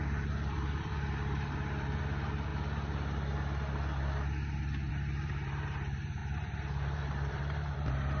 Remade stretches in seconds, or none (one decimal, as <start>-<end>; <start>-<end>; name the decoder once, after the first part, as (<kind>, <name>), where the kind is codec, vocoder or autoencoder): 0.0-2.5 (vocoder, BigVGAN v2); 4.9-8.2